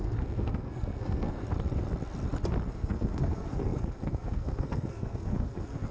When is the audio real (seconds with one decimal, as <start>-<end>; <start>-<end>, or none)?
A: 1.4-2.7